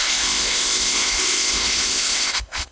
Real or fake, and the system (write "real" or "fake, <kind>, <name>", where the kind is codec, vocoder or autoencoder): fake, codec, ZipCodec